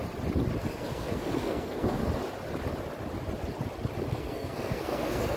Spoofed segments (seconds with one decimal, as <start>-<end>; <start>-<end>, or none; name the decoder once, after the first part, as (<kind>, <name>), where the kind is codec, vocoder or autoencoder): 0.6-2.0 (codec, SNAC); 4.1-5.4